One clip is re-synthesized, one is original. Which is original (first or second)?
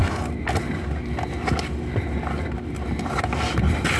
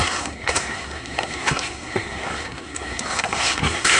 first